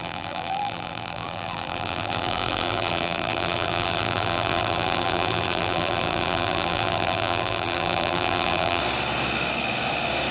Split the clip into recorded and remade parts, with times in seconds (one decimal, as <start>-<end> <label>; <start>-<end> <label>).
0.0-8.8 remade; 8.8-10.3 recorded